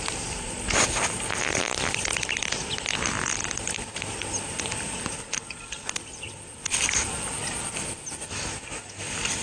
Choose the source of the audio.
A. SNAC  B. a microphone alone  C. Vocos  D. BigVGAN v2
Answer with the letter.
B